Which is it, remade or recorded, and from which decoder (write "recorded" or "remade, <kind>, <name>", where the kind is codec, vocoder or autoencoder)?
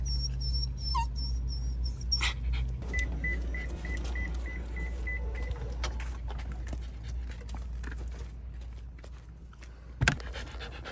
recorded